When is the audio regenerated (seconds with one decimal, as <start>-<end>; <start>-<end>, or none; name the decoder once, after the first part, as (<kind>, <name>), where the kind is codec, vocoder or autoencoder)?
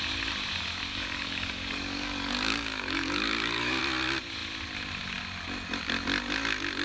0.9-3.8 (codec, DAC)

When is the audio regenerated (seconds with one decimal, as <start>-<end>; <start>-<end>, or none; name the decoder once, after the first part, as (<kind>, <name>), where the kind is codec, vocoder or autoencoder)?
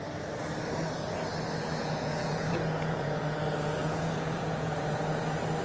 1.8-3.2 (vocoder, Vocos); 3.8-5.0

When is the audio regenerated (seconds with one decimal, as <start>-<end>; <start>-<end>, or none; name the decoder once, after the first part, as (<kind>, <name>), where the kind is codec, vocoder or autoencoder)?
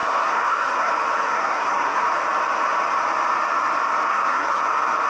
0.0-0.9 (codec, SNAC); 1.3-2.0; 4.1-4.6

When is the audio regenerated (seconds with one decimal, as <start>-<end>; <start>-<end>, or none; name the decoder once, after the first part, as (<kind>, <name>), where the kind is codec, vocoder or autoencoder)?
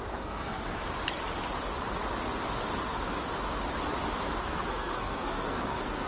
0.0-0.7 (codec, SNAC); 4.4-6.1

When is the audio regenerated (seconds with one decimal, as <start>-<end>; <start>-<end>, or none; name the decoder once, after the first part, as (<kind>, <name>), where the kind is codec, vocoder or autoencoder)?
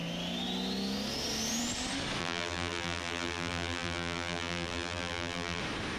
2.2-5.6 (vocoder, BigVGAN v2)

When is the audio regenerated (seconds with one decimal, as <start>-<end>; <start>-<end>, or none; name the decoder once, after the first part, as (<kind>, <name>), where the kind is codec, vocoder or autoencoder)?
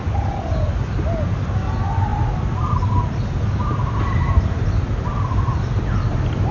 none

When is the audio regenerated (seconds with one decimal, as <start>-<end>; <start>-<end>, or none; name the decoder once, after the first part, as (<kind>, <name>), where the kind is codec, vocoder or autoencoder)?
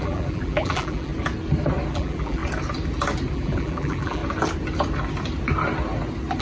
0.0-1.1 (vocoder, BigVGAN v2); 1.9-2.4; 3.3-4.2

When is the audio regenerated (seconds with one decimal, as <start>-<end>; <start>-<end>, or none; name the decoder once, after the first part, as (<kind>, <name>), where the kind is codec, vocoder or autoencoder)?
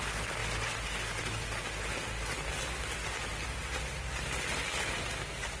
none